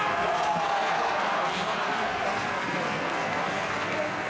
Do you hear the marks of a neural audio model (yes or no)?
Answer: yes